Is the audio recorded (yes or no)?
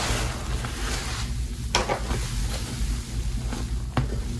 yes